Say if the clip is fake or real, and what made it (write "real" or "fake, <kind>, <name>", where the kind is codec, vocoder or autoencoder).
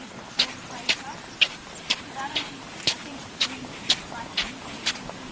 fake, vocoder, BigVGAN v2